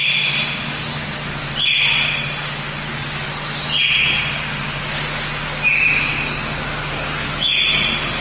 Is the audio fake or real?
real